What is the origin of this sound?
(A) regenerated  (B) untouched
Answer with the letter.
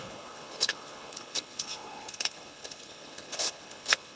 A